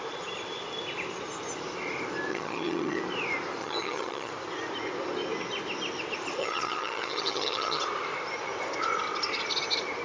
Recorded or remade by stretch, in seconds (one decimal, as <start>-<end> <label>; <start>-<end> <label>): 0.0-2.3 recorded; 2.3-3.0 remade; 3.0-3.6 recorded; 3.6-4.3 remade; 4.3-6.4 recorded; 6.4-7.8 remade; 7.8-10.0 recorded